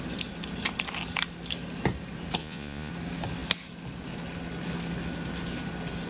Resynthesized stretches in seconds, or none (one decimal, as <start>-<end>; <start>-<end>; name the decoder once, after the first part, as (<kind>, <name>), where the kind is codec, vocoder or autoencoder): 2.4-2.9 (vocoder, Vocos)